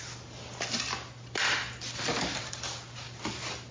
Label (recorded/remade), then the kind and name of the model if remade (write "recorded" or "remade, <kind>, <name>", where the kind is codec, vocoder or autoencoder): recorded